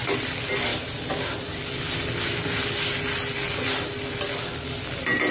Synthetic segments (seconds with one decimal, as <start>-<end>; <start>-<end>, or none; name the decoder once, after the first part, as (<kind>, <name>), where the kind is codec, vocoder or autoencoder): none